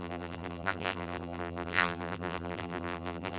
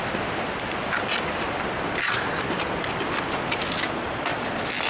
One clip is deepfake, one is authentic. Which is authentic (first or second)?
second